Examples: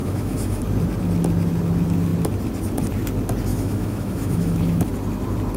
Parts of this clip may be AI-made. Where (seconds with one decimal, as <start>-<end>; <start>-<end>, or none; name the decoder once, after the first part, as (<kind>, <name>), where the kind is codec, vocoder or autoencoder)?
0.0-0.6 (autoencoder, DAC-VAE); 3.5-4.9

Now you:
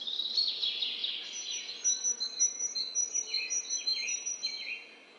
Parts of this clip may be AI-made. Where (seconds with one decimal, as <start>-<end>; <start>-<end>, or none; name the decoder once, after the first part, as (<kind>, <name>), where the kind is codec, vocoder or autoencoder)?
none

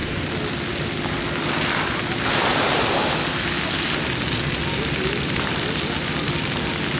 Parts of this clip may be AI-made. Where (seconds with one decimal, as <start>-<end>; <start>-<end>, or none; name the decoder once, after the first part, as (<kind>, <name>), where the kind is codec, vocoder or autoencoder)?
none

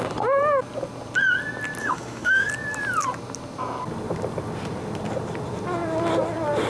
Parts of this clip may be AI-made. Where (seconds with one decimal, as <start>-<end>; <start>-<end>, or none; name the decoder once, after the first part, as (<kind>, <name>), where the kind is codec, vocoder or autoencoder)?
1.8-2.5 (autoencoder, DAC-VAE)

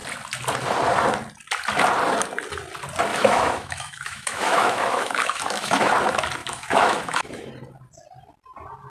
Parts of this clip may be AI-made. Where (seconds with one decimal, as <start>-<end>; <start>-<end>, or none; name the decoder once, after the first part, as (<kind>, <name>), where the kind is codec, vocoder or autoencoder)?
3.1-5.9 (autoencoder, DAC-VAE); 6.4-7.5

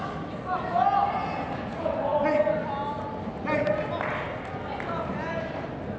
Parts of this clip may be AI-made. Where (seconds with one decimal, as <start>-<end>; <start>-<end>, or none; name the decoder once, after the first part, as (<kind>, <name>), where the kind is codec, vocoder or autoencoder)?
none